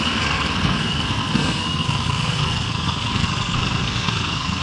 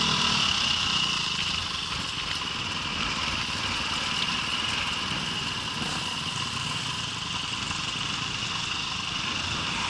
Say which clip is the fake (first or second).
first